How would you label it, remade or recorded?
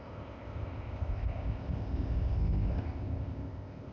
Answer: remade